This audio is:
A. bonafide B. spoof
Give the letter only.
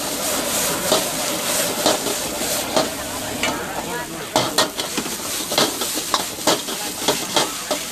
A